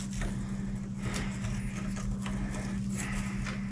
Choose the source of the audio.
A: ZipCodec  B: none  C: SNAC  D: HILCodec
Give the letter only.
B